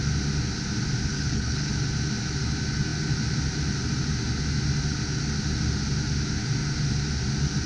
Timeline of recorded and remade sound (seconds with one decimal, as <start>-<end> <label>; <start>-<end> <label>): 0.0-1.1 recorded; 1.1-1.7 remade; 1.7-7.7 recorded